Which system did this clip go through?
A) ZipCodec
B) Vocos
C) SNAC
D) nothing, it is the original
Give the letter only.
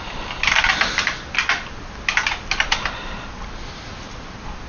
D